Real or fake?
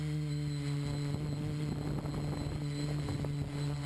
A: real